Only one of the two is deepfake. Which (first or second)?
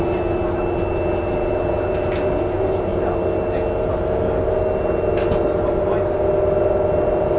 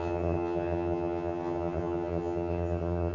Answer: second